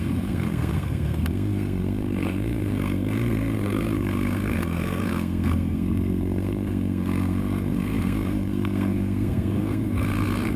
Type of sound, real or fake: fake